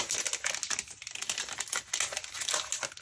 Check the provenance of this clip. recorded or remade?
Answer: recorded